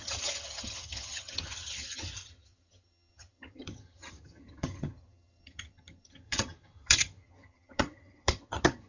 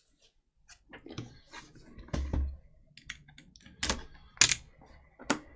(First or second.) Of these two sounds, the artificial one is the first